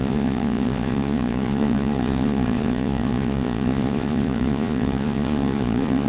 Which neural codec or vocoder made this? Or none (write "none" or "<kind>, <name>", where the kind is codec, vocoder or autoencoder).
vocoder, Vocos